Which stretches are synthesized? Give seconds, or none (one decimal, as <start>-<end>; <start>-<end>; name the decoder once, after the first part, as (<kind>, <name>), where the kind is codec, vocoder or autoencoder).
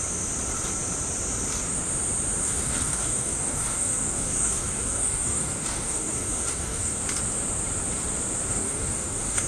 2.4-7.0 (codec, DAC); 8.5-9.5